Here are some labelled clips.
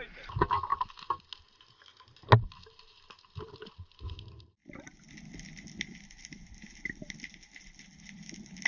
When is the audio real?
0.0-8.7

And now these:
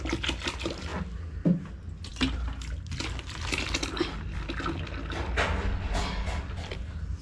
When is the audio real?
0.0-7.2

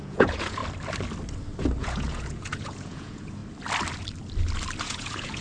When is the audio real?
0.6-1.8; 3.4-4.8

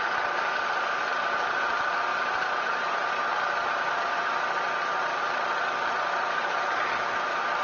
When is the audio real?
0.0-7.6

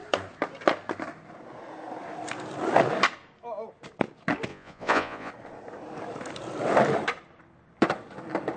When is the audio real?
0.0-4.5; 5.3-8.6